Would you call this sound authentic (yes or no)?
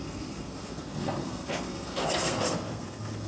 no